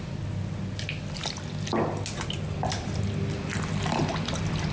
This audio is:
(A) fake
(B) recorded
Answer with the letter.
B